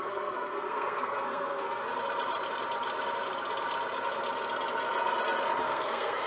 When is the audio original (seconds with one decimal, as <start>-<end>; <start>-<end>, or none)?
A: 1.8-5.6